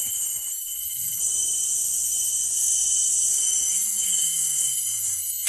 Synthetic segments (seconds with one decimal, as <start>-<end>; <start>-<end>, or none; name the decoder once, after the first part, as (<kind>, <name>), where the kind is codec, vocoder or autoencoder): 0.0-1.2 (autoencoder, DAC-VAE); 3.3-5.5